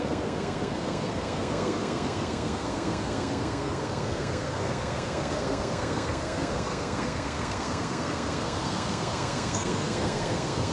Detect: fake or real fake